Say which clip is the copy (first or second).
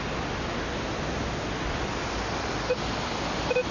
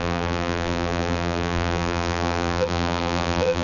second